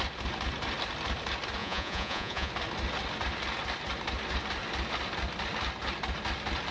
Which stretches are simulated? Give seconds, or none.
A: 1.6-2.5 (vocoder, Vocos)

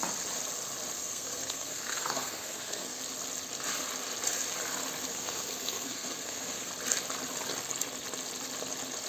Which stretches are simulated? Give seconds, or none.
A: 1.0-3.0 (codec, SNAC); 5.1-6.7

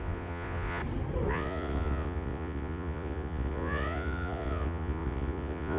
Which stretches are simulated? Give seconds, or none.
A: 0.0-0.8 (vocoder, Vocos); 1.3-5.8

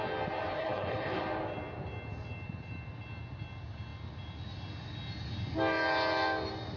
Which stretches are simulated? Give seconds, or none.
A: 0.5-1.2 (codec, HILCodec)

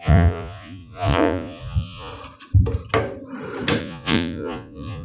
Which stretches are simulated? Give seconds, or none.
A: 0.0-2.1 (vocoder, Vocos); 3.8-5.0

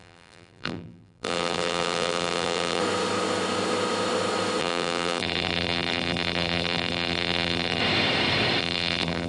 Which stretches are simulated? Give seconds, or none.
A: 0.0-2.8 (vocoder, BigVGAN v2); 4.6-7.8; 8.6-9.3

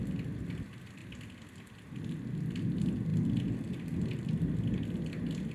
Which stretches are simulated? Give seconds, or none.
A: none